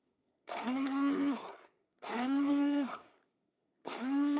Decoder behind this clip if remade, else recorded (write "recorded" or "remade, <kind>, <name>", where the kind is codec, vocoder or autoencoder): remade, codec, SNAC